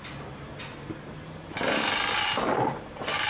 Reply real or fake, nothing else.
real